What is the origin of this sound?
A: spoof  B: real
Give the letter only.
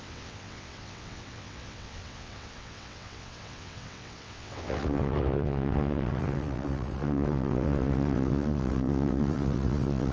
A